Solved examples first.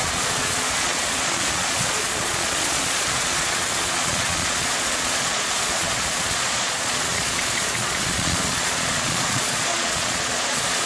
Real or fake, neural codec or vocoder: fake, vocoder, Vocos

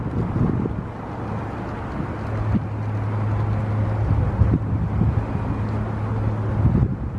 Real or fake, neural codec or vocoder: real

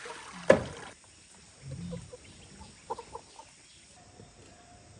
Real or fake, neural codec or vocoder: real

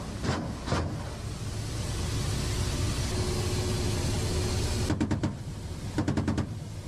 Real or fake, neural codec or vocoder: real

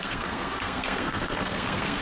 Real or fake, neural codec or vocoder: fake, codec, SNAC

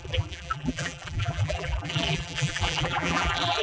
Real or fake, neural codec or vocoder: fake, vocoder, BigVGAN v2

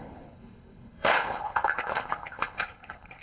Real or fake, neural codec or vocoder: fake, codec, HILCodec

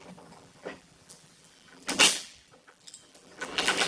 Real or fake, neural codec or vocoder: fake, vocoder, BigVGAN v2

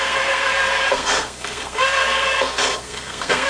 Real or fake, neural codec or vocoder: fake, codec, SNAC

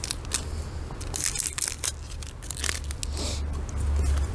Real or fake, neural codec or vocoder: real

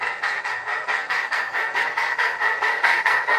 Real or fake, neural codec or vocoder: fake, codec, SNAC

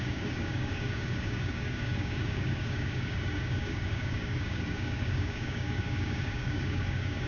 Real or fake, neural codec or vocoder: fake, codec, DAC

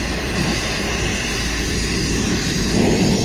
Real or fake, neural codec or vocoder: fake, vocoder, BigVGAN v2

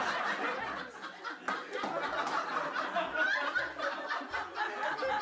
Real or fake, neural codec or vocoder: real